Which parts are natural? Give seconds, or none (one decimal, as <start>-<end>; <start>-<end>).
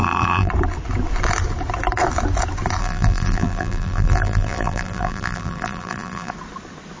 0.5-2.8; 6.3-7.0